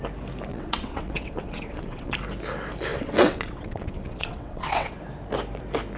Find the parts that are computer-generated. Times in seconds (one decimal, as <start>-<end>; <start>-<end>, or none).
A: 0.5-2.1; 2.9-4.9